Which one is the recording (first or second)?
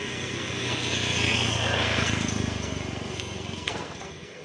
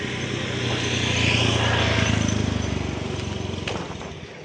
second